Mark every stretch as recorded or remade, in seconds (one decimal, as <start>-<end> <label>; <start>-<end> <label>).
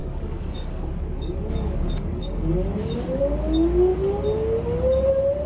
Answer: 0.0-3.9 remade; 3.9-5.5 recorded